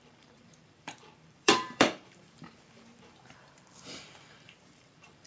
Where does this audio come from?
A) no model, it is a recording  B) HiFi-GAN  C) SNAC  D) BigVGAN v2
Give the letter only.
D